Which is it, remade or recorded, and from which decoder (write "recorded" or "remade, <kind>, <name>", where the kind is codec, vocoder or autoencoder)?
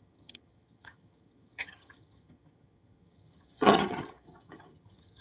remade, vocoder, HiFi-GAN